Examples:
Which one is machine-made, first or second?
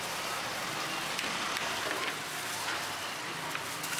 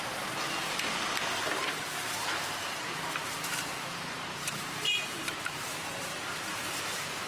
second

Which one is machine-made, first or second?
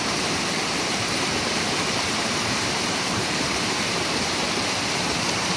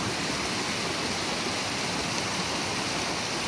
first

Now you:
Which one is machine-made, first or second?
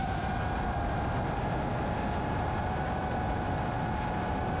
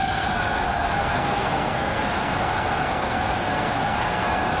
second